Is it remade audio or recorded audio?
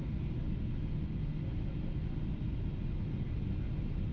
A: recorded